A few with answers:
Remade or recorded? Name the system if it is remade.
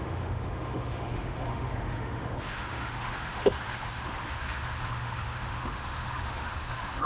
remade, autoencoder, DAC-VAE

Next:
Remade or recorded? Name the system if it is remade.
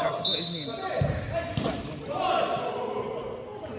recorded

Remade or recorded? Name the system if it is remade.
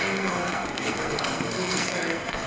remade, codec, SNAC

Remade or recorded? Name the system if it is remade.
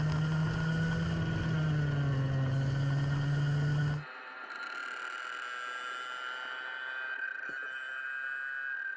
recorded